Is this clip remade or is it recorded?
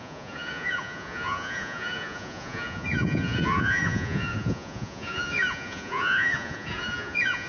remade